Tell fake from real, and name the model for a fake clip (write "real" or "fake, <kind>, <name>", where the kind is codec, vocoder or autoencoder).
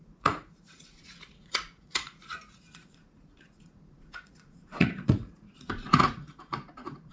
fake, vocoder, Vocos